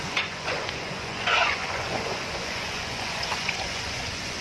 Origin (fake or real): fake